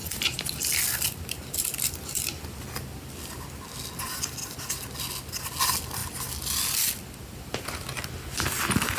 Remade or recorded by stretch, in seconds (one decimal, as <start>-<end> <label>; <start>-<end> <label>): 0.0-9.0 recorded